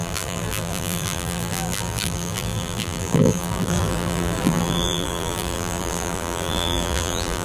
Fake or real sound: fake